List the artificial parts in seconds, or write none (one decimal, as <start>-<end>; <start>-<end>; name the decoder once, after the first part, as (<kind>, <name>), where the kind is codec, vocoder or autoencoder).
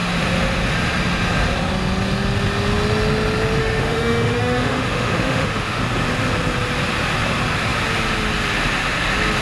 3.6-5.8 (autoencoder, DAC-VAE)